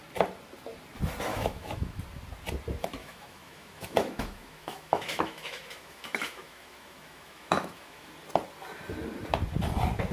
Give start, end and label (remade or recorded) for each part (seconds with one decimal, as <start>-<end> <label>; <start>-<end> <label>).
0.0-1.3 recorded; 1.3-2.0 remade; 2.0-3.0 recorded; 3.0-8.1 remade; 8.1-10.1 recorded